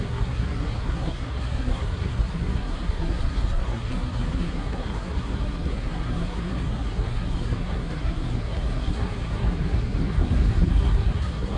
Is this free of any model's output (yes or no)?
no